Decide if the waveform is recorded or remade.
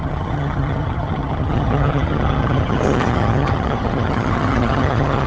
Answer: remade